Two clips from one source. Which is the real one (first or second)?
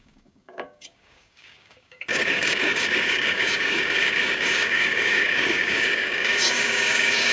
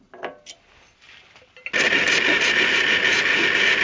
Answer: second